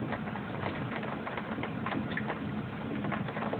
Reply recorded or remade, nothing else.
remade